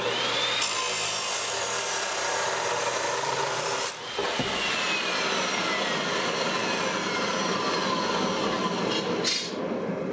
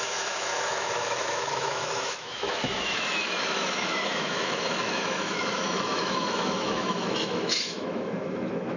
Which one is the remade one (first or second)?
second